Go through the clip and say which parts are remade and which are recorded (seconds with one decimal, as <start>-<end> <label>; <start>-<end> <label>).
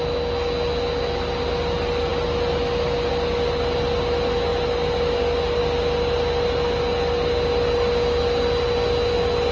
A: 0.0-9.5 recorded